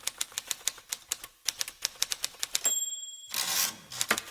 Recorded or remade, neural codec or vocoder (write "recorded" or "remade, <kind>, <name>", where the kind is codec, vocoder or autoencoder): remade, vocoder, BigVGAN v2